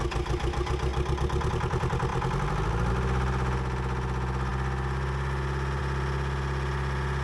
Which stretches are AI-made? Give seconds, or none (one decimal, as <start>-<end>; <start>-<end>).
none